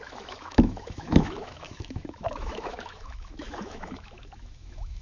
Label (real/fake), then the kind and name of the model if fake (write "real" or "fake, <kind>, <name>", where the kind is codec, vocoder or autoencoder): fake, autoencoder, DAC-VAE